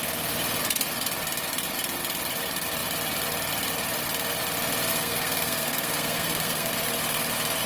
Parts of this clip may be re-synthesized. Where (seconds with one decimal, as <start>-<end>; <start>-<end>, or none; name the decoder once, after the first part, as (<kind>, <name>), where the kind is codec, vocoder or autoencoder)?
4.9-6.7 (codec, SNAC)